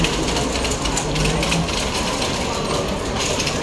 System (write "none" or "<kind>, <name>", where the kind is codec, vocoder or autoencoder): none